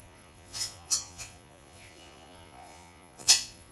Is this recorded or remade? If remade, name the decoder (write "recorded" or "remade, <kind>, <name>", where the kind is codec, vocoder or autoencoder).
remade, vocoder, Vocos